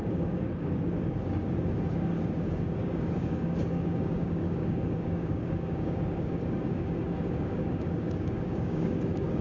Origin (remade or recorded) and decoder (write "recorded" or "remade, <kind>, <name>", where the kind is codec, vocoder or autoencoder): remade, codec, DAC